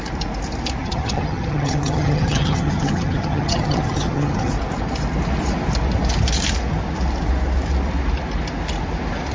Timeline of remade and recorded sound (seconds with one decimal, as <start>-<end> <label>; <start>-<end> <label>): 0.0-0.8 recorded; 0.8-4.5 remade; 4.5-9.3 recorded